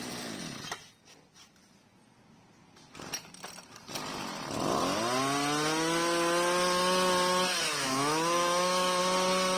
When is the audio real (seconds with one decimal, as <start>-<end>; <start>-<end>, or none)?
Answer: 0.0-7.5; 9.0-9.6